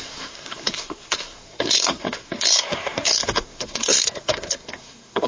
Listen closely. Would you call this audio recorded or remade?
remade